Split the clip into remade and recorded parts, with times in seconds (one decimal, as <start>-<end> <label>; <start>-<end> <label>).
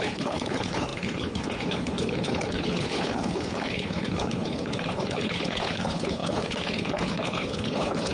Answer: 0.0-8.1 remade